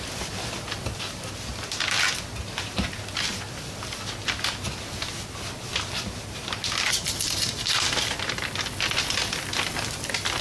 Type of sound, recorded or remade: recorded